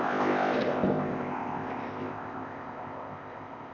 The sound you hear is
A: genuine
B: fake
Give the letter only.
B